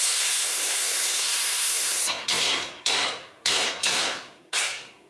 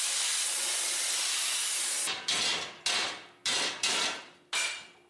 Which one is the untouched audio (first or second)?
second